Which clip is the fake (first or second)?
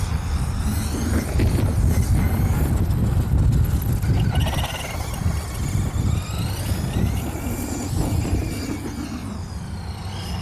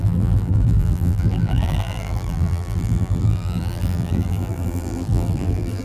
second